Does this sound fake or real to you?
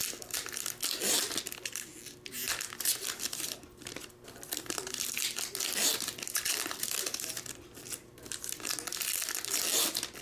real